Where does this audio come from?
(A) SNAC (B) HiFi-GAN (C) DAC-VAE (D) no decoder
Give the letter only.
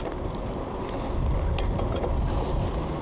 D